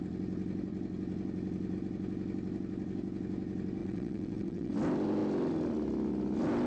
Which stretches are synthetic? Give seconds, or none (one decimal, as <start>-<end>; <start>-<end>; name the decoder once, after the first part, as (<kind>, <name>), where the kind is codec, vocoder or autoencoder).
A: 3.8-4.7 (vocoder, WaveNeXt)